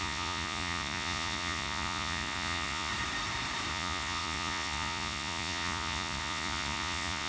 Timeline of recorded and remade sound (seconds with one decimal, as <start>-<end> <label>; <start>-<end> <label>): 0.0-2.9 remade; 2.9-3.7 recorded; 3.7-7.3 remade